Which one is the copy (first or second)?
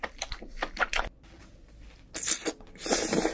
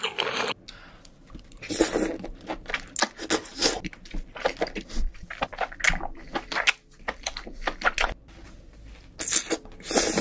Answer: first